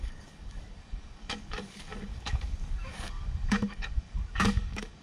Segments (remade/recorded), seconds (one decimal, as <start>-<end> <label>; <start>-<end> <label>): 0.0-5.0 remade